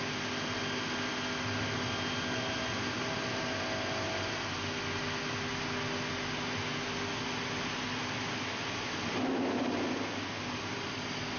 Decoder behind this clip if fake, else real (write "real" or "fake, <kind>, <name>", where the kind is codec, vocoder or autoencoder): real